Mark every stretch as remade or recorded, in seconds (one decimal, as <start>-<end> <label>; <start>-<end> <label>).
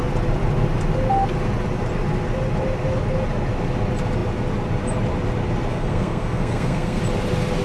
0.0-5.7 recorded; 5.7-7.0 remade; 7.0-7.6 recorded